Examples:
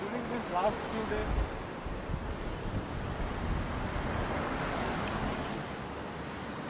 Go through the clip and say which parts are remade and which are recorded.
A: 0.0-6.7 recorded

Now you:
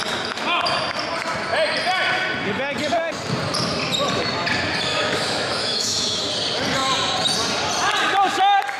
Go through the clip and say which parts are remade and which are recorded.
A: 0.0-4.9 recorded; 4.9-6.2 remade; 6.2-8.8 recorded

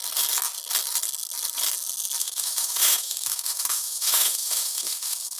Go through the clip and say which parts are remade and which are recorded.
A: 0.0-2.2 recorded; 2.2-5.4 remade

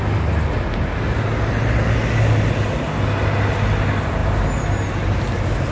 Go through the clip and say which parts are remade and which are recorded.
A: 0.0-5.7 recorded

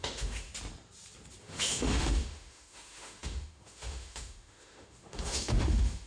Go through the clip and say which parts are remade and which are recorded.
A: 0.0-0.5 remade; 0.5-1.4 recorded; 1.4-6.1 remade

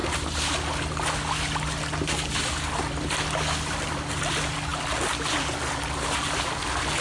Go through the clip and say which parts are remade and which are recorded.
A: 0.0-7.0 recorded

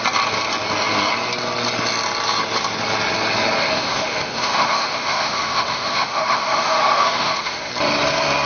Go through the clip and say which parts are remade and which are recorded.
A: 0.0-3.6 recorded; 3.6-7.7 remade; 7.7-8.5 recorded

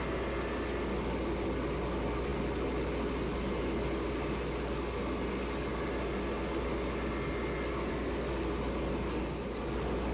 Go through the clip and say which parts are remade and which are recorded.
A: 0.0-10.1 recorded